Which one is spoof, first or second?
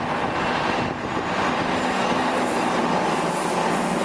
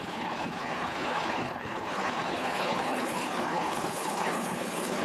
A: second